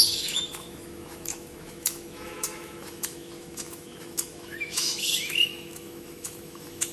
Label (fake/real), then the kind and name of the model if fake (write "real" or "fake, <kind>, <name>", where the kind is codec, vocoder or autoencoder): fake, autoencoder, DAC-VAE